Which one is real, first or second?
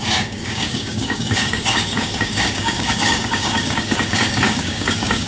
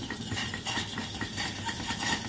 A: second